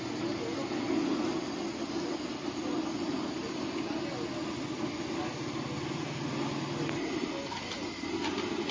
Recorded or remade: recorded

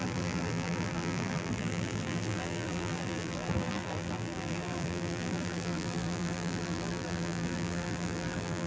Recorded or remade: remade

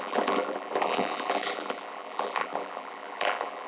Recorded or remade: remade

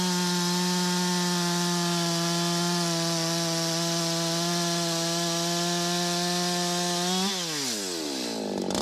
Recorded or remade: recorded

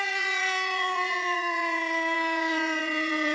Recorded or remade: remade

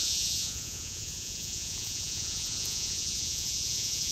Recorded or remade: remade